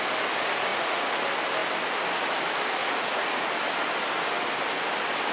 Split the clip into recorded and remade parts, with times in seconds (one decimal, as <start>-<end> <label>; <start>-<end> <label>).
0.0-0.7 recorded; 0.7-1.2 remade; 1.2-2.8 recorded; 2.8-3.4 remade; 3.4-5.3 recorded